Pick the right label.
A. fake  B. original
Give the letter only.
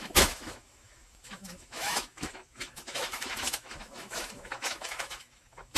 A